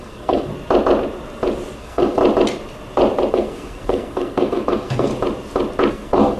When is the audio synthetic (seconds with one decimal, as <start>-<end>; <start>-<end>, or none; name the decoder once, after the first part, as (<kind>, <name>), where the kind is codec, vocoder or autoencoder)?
0.0-0.5 (codec, SNAC); 1.8-2.2; 3.3-5.1; 5.9-6.4